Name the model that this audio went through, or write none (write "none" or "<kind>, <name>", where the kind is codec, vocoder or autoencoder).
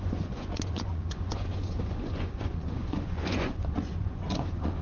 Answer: vocoder, Vocos